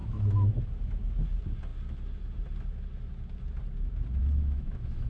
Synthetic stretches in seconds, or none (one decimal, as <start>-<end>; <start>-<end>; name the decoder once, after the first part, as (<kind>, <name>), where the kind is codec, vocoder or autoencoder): 0.0-0.6 (autoencoder, DAC-VAE); 4.2-5.1